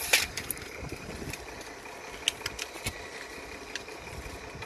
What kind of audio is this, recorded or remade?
recorded